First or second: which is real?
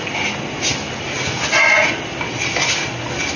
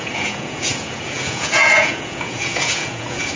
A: first